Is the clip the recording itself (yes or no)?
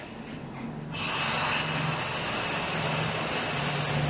yes